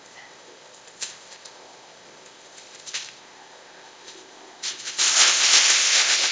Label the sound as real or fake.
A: fake